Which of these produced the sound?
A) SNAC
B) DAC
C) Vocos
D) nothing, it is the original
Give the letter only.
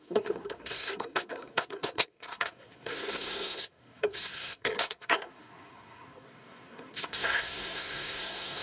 A